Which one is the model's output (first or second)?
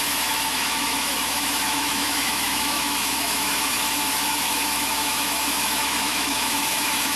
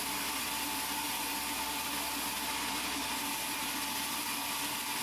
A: first